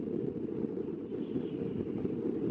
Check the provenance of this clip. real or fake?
real